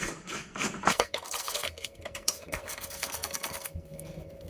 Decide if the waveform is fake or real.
fake